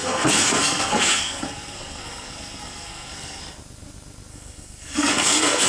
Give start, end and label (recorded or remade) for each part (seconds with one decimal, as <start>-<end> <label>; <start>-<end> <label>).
0.0-3.4 remade; 3.4-4.3 recorded; 4.3-5.7 remade